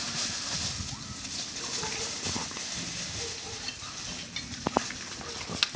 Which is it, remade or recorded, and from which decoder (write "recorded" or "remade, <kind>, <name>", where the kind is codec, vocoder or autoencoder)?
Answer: recorded